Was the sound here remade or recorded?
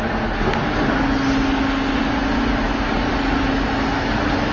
recorded